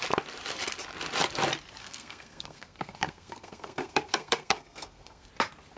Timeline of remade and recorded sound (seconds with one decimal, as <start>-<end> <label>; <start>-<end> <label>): 0.0-1.8 recorded; 1.8-5.3 remade; 5.3-5.8 recorded

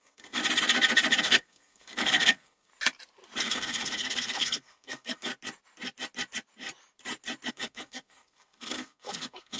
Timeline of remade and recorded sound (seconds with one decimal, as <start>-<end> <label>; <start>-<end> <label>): 0.0-0.4 remade; 0.4-1.2 recorded; 1.2-2.7 remade; 2.7-3.4 recorded; 3.4-5.3 remade; 5.3-7.5 recorded; 7.5-9.6 remade

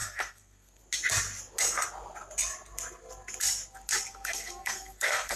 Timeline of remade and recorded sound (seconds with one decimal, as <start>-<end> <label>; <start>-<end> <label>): 0.0-0.8 remade; 0.8-4.1 recorded; 4.1-5.4 remade

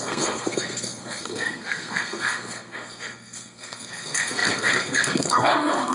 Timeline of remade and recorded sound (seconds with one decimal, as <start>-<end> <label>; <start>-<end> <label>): 0.0-5.9 remade

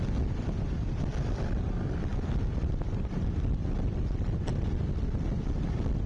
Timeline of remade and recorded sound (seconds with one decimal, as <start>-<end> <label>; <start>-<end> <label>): 0.0-6.1 recorded

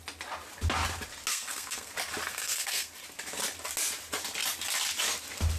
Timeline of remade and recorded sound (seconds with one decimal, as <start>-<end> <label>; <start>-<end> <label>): 0.0-1.3 recorded; 1.3-1.9 remade; 1.9-2.3 recorded; 2.3-2.9 remade; 2.9-5.6 recorded

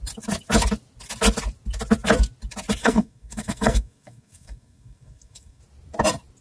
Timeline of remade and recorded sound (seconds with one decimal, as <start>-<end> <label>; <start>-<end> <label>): 0.0-2.8 recorded; 2.8-5.6 remade; 5.6-6.4 recorded

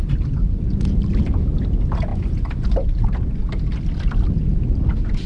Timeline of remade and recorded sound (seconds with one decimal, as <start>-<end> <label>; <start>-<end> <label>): 0.0-5.3 recorded